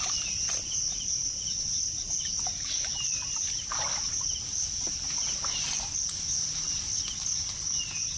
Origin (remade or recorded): recorded